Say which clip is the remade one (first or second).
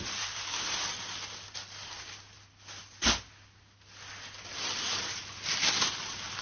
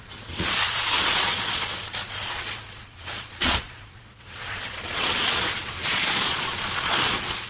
second